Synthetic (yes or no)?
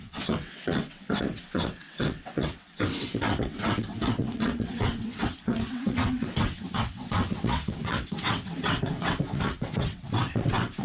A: yes